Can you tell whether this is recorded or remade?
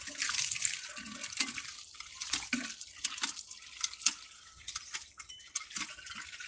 recorded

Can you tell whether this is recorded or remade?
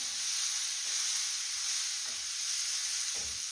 recorded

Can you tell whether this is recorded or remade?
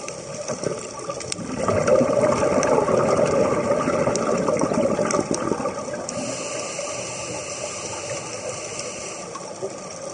recorded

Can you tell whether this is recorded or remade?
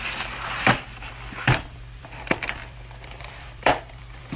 remade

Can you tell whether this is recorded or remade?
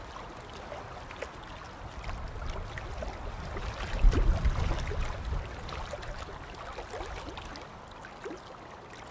recorded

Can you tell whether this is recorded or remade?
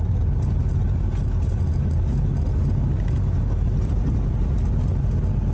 recorded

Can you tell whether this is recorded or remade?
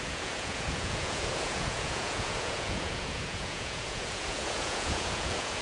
remade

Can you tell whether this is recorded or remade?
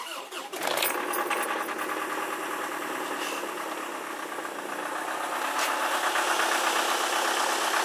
recorded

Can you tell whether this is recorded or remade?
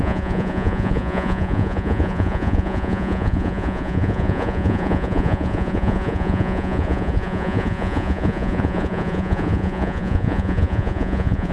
remade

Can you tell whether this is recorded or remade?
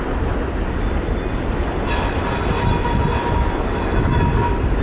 recorded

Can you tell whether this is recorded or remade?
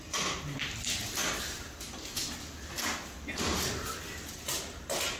recorded